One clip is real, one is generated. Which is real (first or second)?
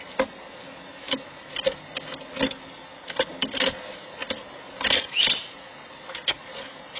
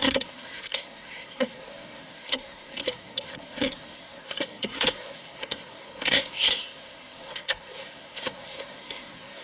first